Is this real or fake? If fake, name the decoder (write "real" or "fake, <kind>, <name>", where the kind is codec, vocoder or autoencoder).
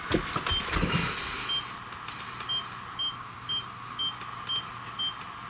real